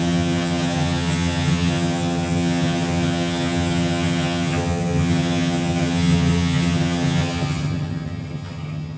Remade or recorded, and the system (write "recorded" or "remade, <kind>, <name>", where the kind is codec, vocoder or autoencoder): remade, vocoder, HiFi-GAN